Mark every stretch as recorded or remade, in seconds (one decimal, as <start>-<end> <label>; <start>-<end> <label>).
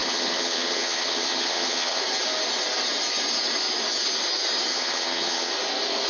0.0-2.0 remade; 2.0-4.7 recorded; 4.7-5.5 remade; 5.5-6.1 recorded